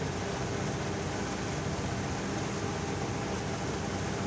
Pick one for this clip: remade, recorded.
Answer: recorded